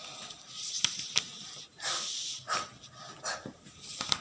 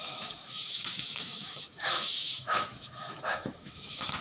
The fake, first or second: second